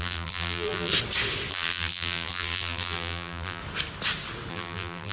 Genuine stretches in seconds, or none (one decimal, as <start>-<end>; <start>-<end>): 0.9-1.5; 3.6-4.5

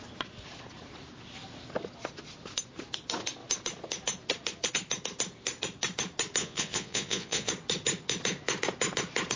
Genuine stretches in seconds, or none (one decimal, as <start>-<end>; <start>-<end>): 0.0-6.4; 7.5-9.4

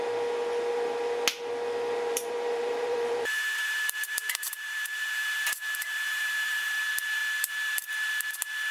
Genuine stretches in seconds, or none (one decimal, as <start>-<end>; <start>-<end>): 0.0-2.1; 6.8-8.7

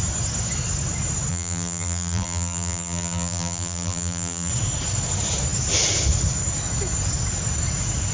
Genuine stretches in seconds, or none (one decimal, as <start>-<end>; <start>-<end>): 0.0-1.3; 4.5-8.1